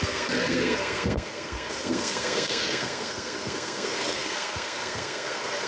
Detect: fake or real fake